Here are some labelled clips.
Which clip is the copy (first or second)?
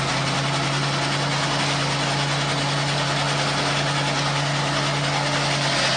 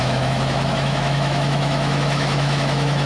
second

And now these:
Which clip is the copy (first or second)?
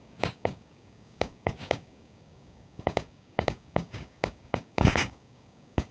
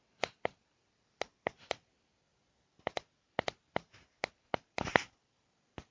first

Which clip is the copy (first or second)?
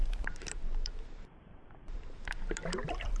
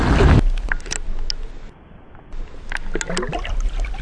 first